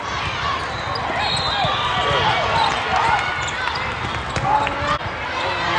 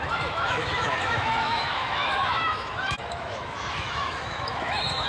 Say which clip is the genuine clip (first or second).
first